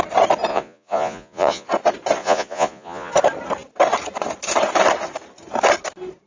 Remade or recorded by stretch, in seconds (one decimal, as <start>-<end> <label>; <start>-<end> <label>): 0.0-0.5 recorded; 0.5-1.7 remade; 1.7-2.2 recorded; 2.2-3.1 remade; 3.1-6.3 recorded